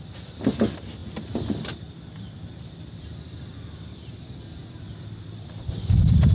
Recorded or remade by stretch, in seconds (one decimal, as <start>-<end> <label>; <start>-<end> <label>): 0.0-6.3 recorded